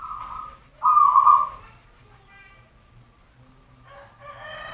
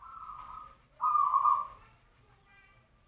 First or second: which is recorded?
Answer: first